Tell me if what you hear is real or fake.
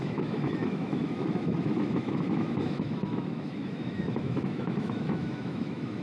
fake